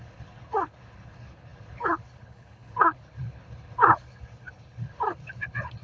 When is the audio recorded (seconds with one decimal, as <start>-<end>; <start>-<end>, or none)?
none